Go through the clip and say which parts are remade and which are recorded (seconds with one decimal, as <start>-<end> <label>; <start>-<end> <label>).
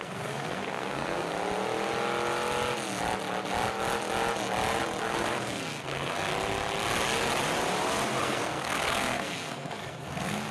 0.0-1.3 remade; 1.3-5.0 recorded; 5.0-6.3 remade; 6.3-8.2 recorded; 8.2-10.5 remade